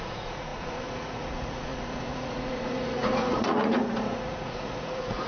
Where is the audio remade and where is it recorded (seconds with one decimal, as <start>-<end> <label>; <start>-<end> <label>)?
0.0-5.3 remade